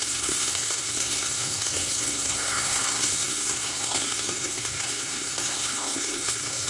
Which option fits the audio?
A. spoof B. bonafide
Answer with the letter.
A